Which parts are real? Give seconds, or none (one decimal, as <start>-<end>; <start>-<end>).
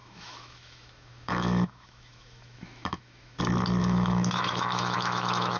3.4-3.8